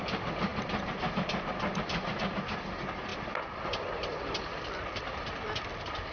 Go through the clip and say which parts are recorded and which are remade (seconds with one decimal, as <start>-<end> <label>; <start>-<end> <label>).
0.0-3.1 recorded; 3.1-5.3 remade; 5.3-6.1 recorded